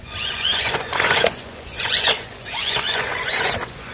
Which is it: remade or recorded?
remade